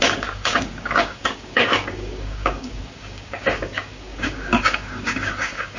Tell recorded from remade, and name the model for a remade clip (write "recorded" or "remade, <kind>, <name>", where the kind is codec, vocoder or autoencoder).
remade, codec, DAC